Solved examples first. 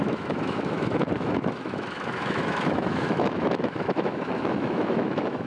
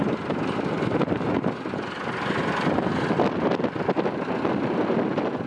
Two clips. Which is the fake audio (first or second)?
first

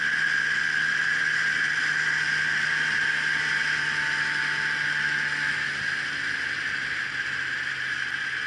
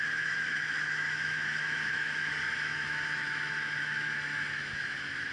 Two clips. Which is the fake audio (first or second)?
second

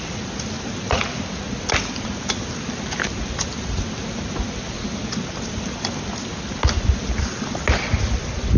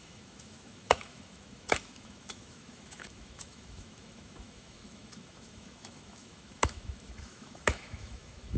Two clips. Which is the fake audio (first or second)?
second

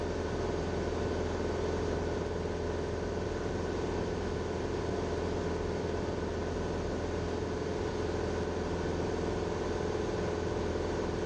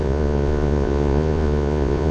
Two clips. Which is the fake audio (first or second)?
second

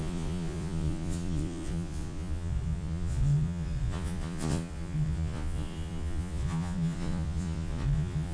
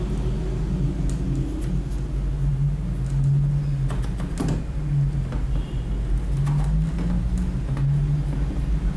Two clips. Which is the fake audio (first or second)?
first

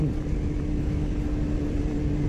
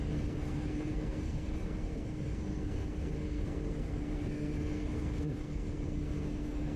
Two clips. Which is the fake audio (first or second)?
second